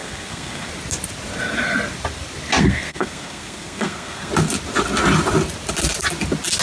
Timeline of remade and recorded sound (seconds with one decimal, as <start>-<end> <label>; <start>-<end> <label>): 0.0-0.7 remade; 0.7-2.6 recorded; 2.6-4.3 remade; 4.3-6.6 recorded